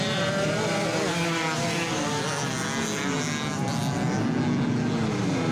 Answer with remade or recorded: recorded